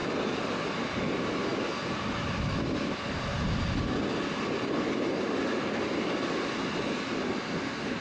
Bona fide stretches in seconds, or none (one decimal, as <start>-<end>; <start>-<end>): 0.0-8.0